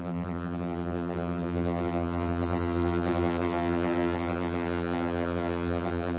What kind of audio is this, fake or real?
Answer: fake